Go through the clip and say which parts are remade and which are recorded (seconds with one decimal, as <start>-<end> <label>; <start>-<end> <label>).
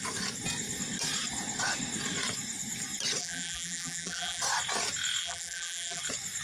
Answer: 0.0-3.2 recorded; 3.2-4.4 remade; 4.4-5.2 recorded; 5.2-6.0 remade; 6.0-6.4 recorded